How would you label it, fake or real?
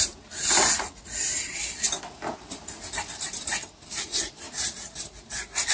fake